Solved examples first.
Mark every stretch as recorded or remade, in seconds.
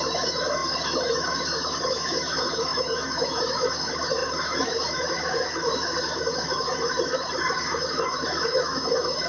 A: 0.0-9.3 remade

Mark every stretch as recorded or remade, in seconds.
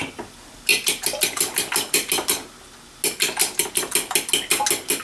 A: 0.0-5.0 recorded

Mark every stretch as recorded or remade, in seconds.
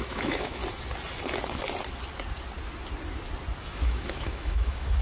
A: 0.0-0.6 remade; 0.6-3.6 recorded; 3.6-5.0 remade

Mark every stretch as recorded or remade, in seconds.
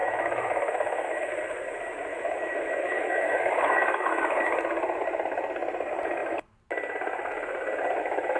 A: 0.0-1.3 remade; 1.3-2.1 recorded; 2.1-4.4 remade; 4.4-8.4 recorded